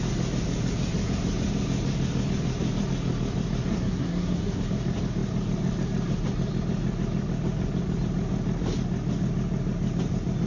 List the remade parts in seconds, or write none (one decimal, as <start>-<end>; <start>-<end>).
3.7-4.6